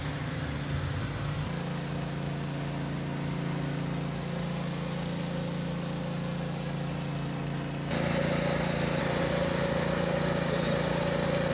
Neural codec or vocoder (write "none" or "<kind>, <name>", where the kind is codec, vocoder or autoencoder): none